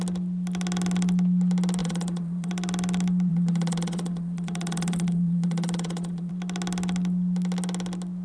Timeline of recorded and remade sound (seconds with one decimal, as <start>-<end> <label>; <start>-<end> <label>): 0.0-1.8 recorded; 1.8-2.5 remade; 2.5-3.3 recorded; 3.3-6.3 remade; 6.3-8.2 recorded